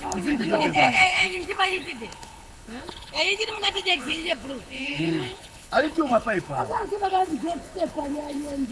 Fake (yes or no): yes